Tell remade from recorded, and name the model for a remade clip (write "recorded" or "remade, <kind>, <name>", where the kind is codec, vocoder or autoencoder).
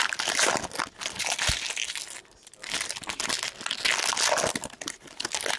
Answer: recorded